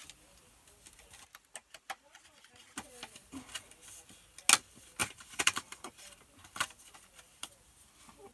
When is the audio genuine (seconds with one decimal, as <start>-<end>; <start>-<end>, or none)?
0.0-5.0; 6.1-8.3